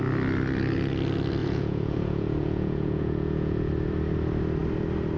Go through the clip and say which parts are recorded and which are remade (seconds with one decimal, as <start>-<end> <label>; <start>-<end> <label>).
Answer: 0.0-1.4 recorded; 1.4-3.7 remade; 3.7-5.2 recorded